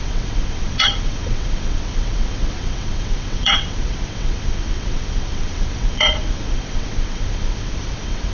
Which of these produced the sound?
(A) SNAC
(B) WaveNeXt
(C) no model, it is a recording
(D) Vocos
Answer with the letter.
B